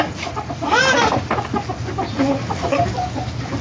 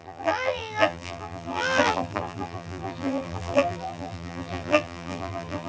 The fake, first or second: second